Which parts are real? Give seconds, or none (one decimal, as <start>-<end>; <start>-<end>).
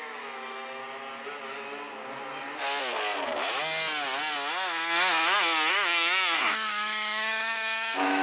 0.8-5.7